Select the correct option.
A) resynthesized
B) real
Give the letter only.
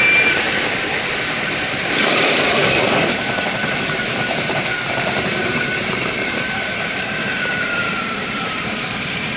A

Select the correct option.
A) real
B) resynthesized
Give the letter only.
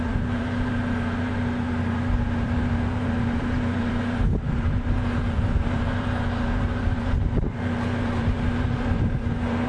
B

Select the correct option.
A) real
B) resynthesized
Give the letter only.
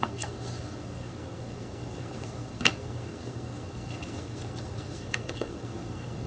B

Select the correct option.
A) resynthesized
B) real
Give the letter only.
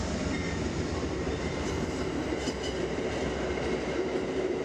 B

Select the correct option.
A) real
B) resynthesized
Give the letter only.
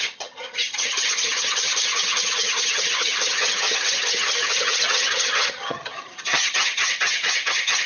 B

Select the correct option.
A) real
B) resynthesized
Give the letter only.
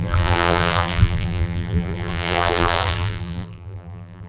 B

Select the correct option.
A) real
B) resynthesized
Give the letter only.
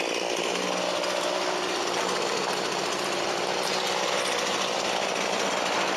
A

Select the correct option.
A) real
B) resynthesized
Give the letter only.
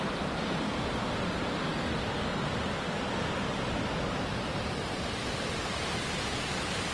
A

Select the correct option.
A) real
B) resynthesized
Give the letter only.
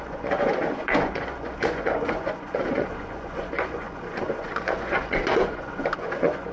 B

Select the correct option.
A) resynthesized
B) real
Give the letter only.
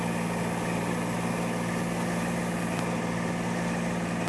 B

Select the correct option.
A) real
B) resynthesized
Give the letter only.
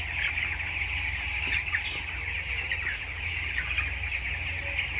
A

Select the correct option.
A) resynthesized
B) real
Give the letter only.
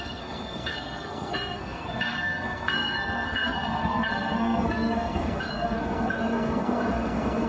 A